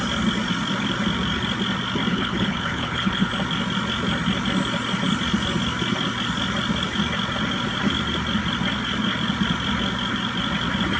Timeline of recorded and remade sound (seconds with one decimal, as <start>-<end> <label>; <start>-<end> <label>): 0.0-2.1 recorded; 2.1-3.3 remade; 3.3-11.0 recorded